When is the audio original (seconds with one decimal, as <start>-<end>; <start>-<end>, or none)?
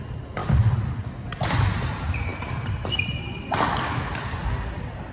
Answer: 0.0-5.1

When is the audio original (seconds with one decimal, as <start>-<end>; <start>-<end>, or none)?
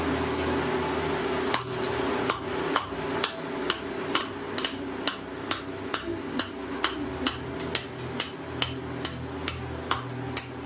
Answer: 0.0-10.7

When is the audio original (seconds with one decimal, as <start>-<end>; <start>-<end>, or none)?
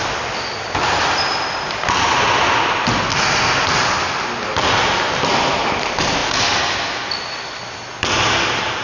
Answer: 0.0-8.8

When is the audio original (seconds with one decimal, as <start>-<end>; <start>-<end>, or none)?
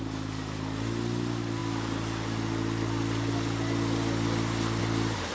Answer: 0.0-5.3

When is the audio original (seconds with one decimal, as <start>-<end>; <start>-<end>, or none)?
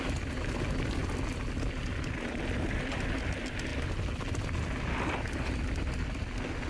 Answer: 0.0-6.7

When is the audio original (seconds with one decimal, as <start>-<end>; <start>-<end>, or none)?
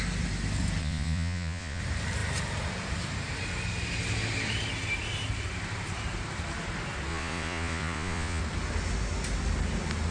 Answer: 0.0-0.8; 1.8-7.1; 8.4-10.1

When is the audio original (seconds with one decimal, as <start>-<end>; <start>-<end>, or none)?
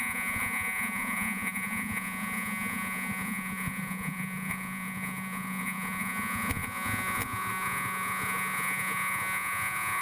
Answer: none